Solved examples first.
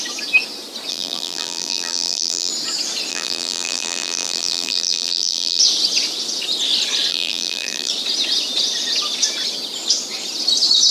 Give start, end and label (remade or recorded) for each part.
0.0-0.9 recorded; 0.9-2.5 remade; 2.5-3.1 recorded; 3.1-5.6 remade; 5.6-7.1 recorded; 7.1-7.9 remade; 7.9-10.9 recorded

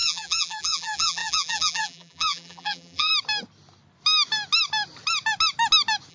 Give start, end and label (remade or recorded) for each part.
0.0-3.1 remade; 3.1-6.1 recorded

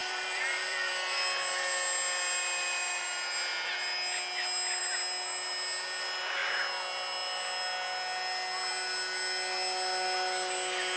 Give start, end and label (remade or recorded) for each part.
0.0-0.9 remade; 0.9-11.0 recorded

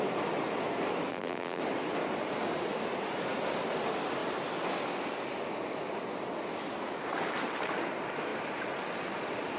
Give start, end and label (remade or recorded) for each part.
0.0-1.1 recorded; 1.1-1.6 remade; 1.6-9.6 recorded

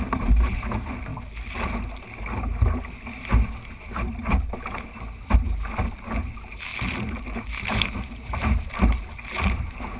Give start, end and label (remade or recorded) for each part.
0.0-1.1 remade; 1.1-5.9 recorded; 5.9-6.7 remade; 6.7-7.2 recorded; 7.2-10.0 remade

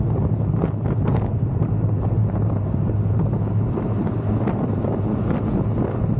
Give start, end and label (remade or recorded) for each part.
0.0-1.3 recorded; 1.3-5.0 remade; 5.0-6.2 recorded

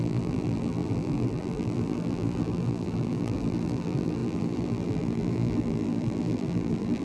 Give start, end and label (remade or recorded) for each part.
0.0-7.0 remade

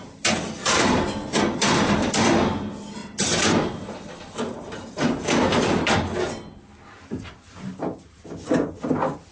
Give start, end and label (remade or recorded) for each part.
0.0-3.0 recorded; 3.0-3.7 remade; 3.7-9.3 recorded